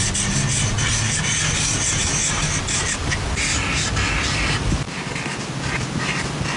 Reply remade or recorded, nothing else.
recorded